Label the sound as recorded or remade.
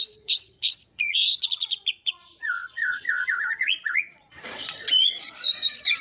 remade